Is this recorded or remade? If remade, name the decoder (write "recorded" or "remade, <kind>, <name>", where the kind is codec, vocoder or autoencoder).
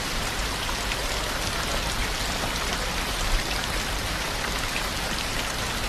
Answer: remade, vocoder, BigVGAN v2